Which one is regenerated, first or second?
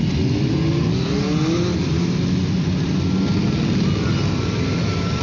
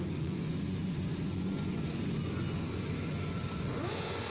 second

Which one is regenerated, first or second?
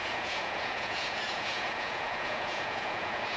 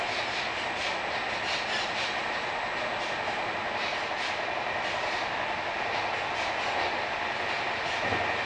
first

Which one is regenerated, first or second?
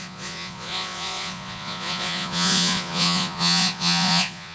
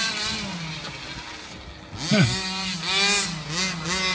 first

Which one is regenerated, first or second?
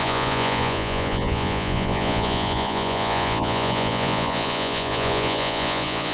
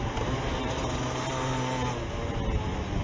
first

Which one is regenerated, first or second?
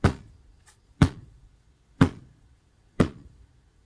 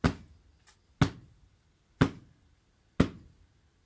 first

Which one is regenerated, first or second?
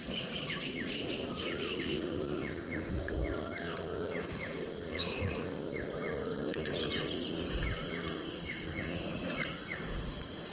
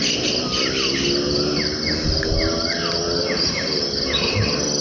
first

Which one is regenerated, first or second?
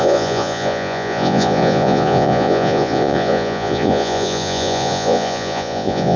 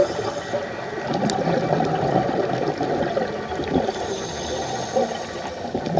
first